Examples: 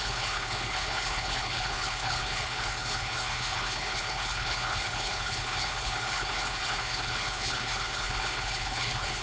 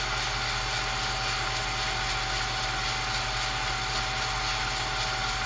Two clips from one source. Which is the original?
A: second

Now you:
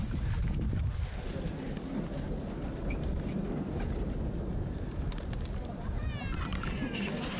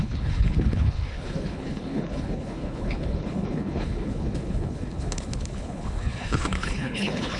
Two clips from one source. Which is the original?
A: first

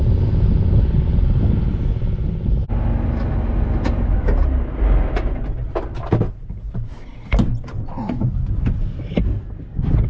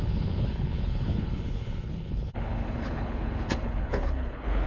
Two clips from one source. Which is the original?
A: first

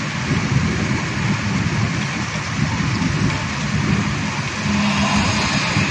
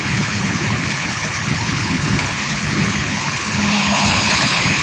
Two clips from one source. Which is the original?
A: first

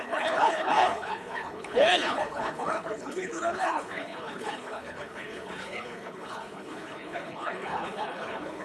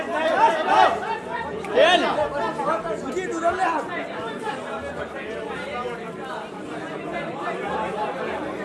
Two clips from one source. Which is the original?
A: second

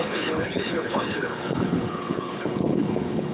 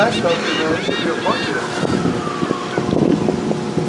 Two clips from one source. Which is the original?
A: second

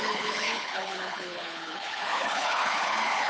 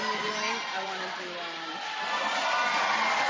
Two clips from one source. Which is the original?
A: second